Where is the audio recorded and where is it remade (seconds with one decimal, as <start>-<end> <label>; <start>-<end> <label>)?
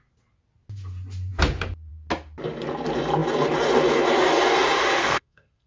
0.0-5.0 recorded; 5.0-5.7 remade